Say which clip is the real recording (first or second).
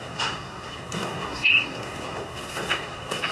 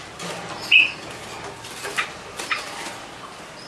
second